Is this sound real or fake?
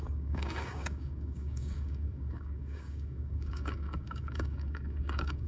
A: fake